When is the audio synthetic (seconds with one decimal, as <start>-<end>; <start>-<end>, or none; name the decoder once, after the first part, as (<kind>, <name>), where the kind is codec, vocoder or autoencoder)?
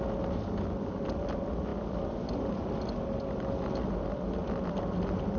none